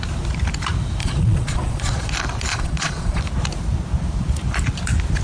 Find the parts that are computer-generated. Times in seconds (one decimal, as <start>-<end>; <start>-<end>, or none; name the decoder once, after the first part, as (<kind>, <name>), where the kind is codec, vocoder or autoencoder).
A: 1.0-2.1 (vocoder, Vocos); 2.5-3.2